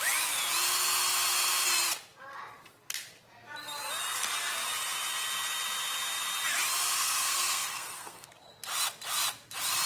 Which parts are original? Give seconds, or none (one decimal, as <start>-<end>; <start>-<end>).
0.0-7.0; 8.3-9.9